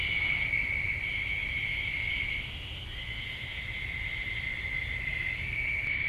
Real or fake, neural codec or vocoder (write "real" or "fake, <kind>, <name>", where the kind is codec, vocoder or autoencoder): real